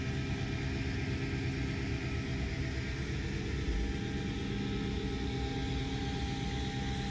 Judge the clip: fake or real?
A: real